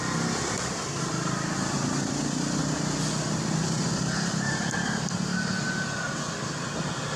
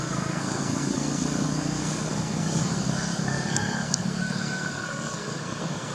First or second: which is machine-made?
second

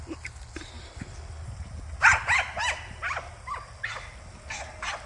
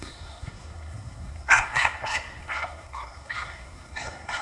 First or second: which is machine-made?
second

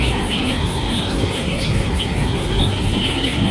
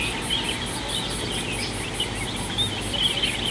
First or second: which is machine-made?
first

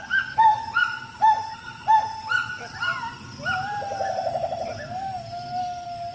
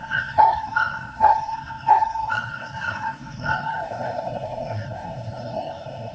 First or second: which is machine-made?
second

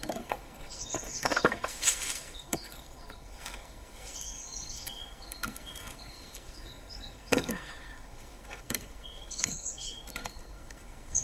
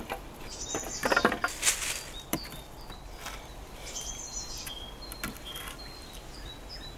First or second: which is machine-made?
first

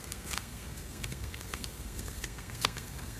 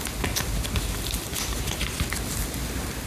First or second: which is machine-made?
first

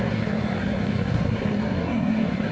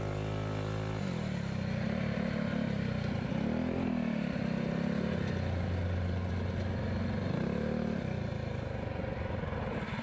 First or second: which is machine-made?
first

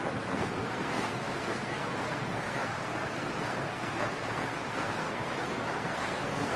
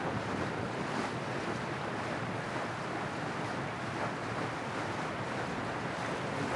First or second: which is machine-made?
first